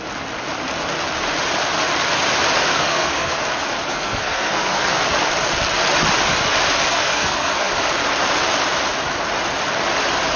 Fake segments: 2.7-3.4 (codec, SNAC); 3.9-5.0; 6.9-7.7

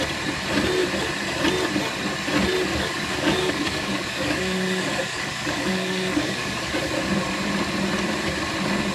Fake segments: 2.7-7.1 (codec, DAC)

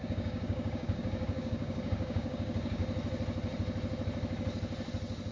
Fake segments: 0.0-2.8 (codec, DAC)

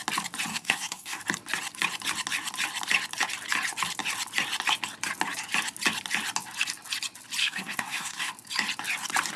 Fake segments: 0.5-1.2 (codec, SNAC); 7.4-8.3

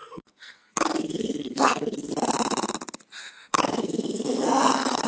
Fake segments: 0.0-2.1 (codec, SNAC); 3.2-5.1

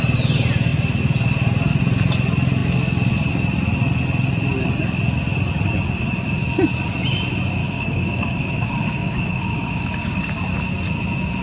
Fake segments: 7.6-10.3 (codec, DAC)

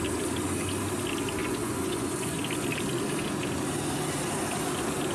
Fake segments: 1.4-2.4 (vocoder, Vocos)